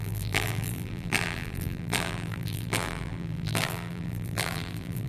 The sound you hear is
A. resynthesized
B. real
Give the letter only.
A